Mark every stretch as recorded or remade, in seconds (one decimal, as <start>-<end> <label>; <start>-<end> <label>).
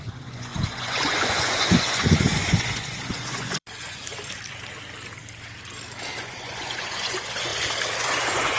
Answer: 0.0-4.1 remade; 4.1-6.2 recorded; 6.2-7.5 remade; 7.5-8.0 recorded; 8.0-8.6 remade